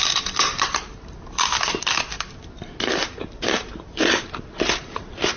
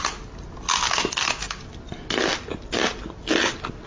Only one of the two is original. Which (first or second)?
second